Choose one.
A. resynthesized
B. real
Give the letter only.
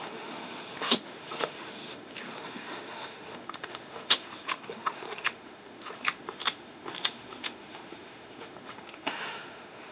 A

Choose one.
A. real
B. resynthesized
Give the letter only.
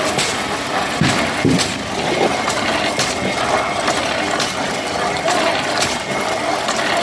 A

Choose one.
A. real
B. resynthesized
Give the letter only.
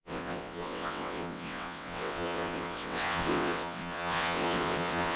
B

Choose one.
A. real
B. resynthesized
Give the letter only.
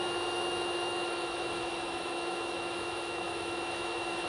B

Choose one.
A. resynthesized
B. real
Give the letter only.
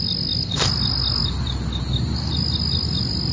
B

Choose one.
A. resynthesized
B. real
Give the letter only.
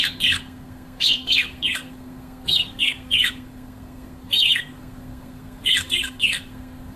A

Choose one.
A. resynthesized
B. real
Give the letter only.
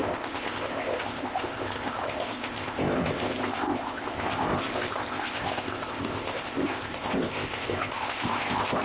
A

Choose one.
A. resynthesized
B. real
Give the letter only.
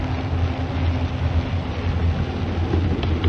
B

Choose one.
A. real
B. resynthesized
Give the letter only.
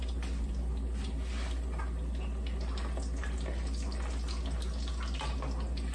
A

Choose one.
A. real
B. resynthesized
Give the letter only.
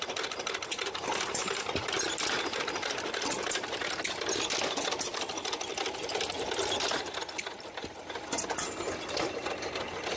A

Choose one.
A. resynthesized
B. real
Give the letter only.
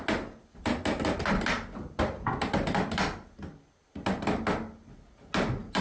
B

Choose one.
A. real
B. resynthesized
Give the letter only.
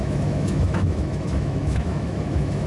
B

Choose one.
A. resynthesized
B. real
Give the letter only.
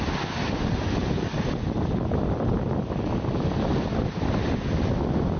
B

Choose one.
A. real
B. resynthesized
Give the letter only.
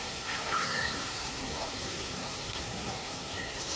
B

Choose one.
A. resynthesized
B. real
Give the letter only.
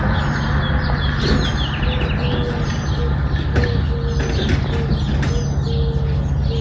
B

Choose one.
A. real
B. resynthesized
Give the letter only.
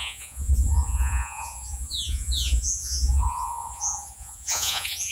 B